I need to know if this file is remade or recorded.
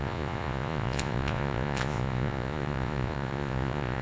remade